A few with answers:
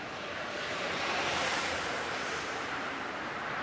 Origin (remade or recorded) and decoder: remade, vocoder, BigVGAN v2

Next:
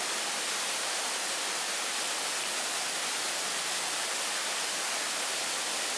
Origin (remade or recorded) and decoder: recorded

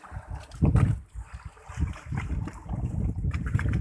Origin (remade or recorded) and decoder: remade, vocoder, BigVGAN v2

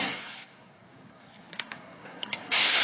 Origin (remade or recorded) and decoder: remade, codec, SNAC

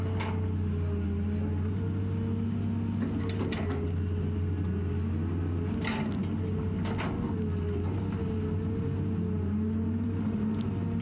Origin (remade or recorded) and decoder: recorded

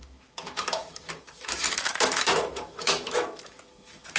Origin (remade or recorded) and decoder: remade, autoencoder, DAC-VAE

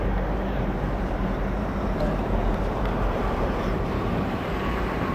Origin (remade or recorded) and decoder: remade, vocoder, BigVGAN v2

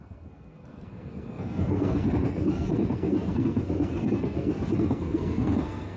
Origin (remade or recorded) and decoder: remade, codec, SNAC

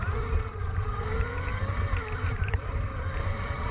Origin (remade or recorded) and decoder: remade, vocoder, BigVGAN v2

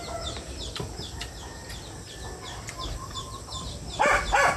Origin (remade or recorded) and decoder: recorded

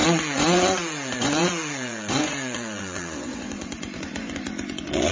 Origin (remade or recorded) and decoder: remade, vocoder, Vocos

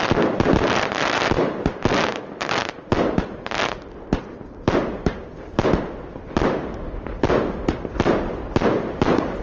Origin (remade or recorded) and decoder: recorded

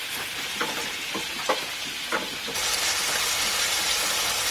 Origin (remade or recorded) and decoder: recorded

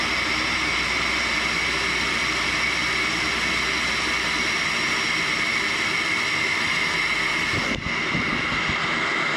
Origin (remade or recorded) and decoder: recorded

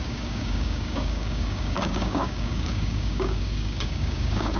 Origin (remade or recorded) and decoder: remade, codec, DAC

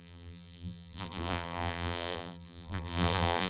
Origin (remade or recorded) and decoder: remade, vocoder, BigVGAN v2